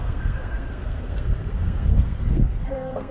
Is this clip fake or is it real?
fake